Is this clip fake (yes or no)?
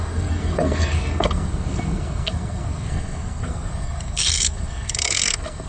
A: yes